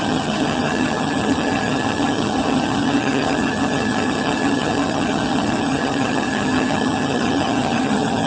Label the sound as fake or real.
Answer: fake